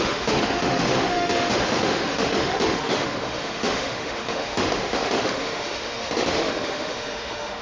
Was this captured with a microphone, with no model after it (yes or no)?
no